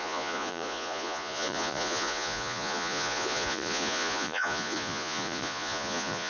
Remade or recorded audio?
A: remade